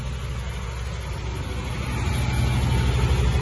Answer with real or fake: real